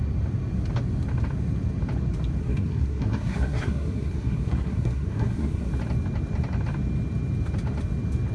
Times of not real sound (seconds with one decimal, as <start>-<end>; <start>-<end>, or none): 2.4-5.7